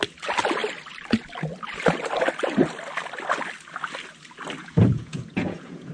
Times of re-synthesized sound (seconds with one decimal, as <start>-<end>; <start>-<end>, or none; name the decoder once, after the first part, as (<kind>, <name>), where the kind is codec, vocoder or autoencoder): 4.6-5.9 (vocoder, Vocos)